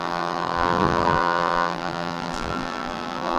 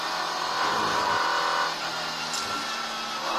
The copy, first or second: first